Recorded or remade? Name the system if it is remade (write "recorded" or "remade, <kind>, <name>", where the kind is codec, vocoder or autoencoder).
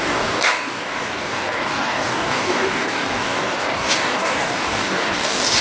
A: remade, codec, DAC